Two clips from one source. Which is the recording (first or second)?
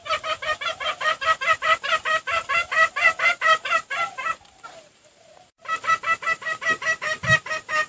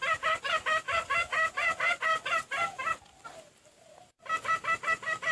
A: second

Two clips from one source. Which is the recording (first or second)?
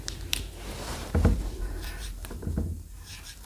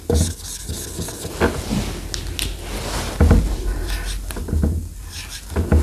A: second